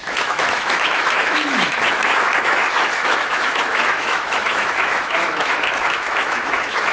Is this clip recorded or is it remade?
remade